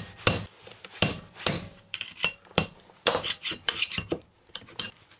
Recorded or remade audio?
remade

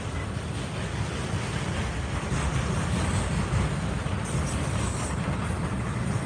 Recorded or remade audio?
recorded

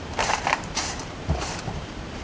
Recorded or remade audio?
remade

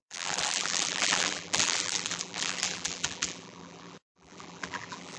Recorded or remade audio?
remade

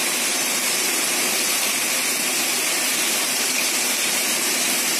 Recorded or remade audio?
remade